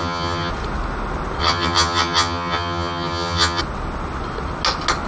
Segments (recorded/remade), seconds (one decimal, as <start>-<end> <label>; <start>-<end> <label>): 0.0-0.5 remade; 0.5-1.4 recorded; 1.4-3.6 remade; 3.6-5.1 recorded